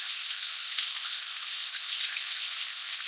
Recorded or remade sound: remade